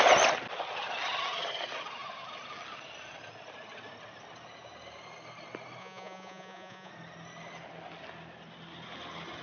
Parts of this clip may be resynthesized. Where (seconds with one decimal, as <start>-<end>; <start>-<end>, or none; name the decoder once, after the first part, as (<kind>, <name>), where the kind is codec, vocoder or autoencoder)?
5.8-6.9 (vocoder, Vocos)